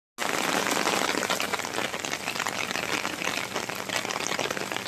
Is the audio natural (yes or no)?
yes